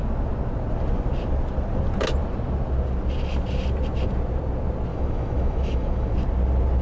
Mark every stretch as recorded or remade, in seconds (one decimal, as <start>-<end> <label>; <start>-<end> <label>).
0.0-4.9 recorded; 4.9-6.1 remade; 6.1-6.8 recorded

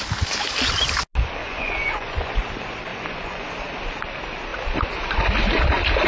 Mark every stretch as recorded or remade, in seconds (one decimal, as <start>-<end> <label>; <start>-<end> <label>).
0.0-1.4 recorded; 1.4-2.3 remade; 2.3-2.9 recorded; 2.9-3.5 remade; 3.5-6.1 recorded

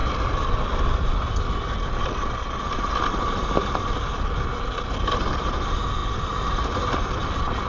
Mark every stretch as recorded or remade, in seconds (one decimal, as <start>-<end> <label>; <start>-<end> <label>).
0.0-6.0 remade; 6.0-6.8 recorded; 6.8-7.7 remade

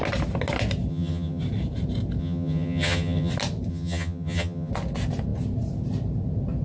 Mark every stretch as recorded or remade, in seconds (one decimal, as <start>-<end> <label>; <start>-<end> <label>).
0.0-0.9 recorded; 0.9-1.4 remade; 1.4-2.2 recorded; 2.2-3.3 remade; 3.3-3.7 recorded; 3.7-4.7 remade; 4.7-6.6 recorded